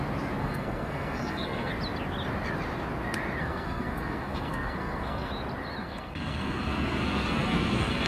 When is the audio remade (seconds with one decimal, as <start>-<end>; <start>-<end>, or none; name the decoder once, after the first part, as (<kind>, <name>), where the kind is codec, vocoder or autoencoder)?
0.4-1.7 (codec, SNAC); 3.4-5.3; 5.8-8.1